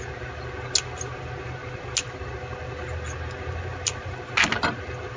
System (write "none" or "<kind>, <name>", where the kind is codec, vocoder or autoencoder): none